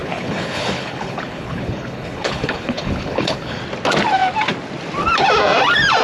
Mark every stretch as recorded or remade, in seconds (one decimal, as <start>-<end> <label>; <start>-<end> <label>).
0.0-3.6 remade; 3.6-6.0 recorded

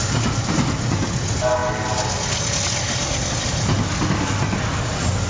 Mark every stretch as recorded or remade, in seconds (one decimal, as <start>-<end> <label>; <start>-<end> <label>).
0.0-5.3 recorded

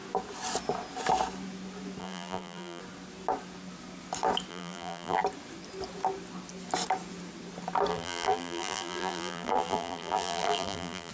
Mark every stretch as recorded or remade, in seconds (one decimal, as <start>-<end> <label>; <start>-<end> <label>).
0.0-2.0 recorded; 2.0-2.8 remade; 2.8-4.5 recorded; 4.5-5.2 remade; 5.2-7.9 recorded; 7.9-11.1 remade

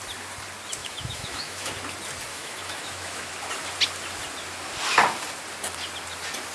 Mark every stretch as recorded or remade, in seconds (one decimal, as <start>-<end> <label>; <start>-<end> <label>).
0.0-0.8 recorded; 0.8-1.7 remade; 1.7-2.3 recorded; 2.3-3.3 remade; 3.3-6.5 recorded

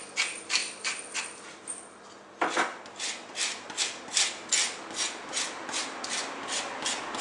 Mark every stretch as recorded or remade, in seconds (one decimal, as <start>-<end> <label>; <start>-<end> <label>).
0.0-7.2 recorded